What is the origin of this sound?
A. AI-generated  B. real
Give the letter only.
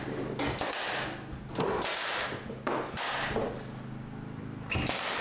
B